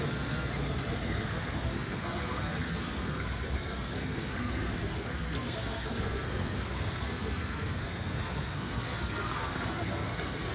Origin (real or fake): fake